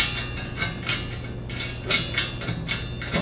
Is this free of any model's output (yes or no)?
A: yes